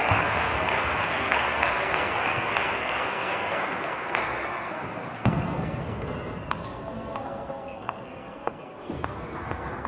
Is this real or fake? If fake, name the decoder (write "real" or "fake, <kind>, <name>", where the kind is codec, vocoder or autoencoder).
fake, codec, SNAC